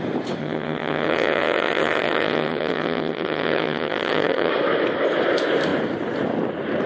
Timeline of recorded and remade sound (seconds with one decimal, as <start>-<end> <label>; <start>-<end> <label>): 0.0-0.4 recorded; 0.4-4.5 remade; 4.5-6.9 recorded